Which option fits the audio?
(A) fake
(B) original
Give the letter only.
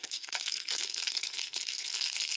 A